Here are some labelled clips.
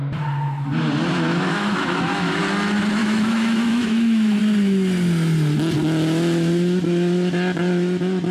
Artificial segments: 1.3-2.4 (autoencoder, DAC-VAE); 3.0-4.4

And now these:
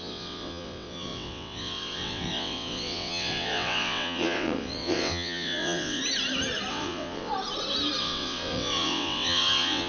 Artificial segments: 0.0-6.0 (vocoder, WaveNeXt); 6.7-7.3; 8.0-9.9

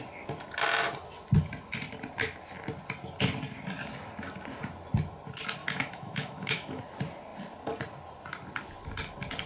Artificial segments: 5.6-6.8 (autoencoder, DAC-VAE)

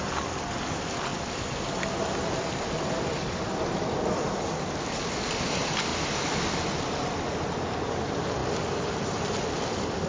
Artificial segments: 1.1-5.3 (vocoder, BigVGAN v2); 5.9-6.6